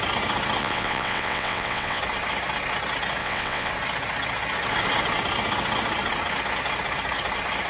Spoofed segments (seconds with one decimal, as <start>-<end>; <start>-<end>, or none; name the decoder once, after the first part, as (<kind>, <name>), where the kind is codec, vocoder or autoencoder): 0.6-2.0 (vocoder, WaveNeXt); 3.2-3.7